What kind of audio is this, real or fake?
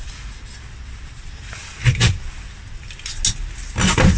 real